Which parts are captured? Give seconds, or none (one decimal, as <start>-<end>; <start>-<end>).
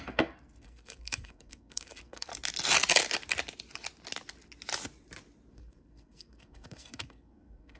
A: 2.3-5.5